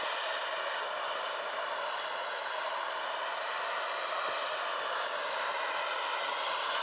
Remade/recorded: recorded